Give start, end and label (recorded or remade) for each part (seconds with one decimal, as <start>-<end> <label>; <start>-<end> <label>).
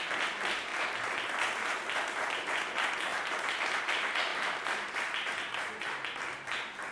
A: 0.0-6.9 recorded